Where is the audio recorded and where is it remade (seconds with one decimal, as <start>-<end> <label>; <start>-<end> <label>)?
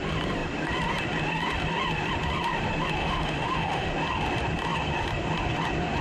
0.0-3.0 recorded; 3.0-3.9 remade; 3.9-6.0 recorded